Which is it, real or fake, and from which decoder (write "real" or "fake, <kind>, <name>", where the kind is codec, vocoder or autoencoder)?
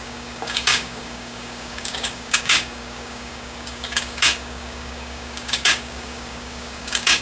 fake, codec, DAC